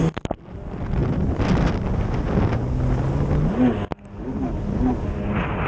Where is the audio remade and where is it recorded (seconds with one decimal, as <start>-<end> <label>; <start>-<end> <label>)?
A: 0.0-5.7 recorded